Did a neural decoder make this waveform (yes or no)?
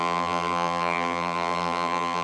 yes